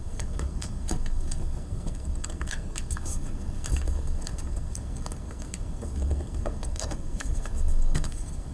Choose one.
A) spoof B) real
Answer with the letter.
A